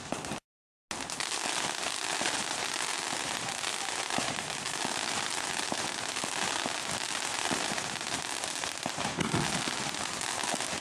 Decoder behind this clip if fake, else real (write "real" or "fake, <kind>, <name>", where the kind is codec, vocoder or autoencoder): real